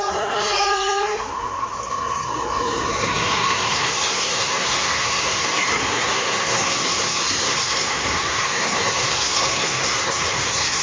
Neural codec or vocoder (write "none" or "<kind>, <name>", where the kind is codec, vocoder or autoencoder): codec, SNAC